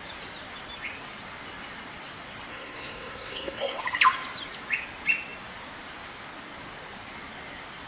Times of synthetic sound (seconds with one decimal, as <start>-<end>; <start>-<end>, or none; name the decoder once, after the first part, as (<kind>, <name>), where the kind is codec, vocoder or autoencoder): 2.5-3.8 (codec, SNAC)